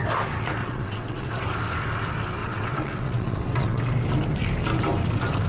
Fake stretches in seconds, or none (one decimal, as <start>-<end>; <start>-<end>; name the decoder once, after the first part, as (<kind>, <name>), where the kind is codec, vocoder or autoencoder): 0.6-1.3 (vocoder, WaveNeXt); 2.4-3.8